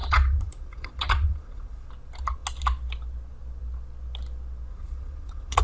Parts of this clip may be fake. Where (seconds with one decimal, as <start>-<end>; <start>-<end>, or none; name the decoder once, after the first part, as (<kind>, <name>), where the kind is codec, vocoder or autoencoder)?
0.0-1.9 (vocoder, Vocos); 4.7-5.6